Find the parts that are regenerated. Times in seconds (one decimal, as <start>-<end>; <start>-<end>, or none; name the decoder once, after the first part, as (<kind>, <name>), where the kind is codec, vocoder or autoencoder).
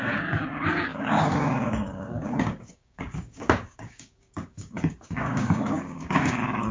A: 0.0-6.7 (codec, DAC)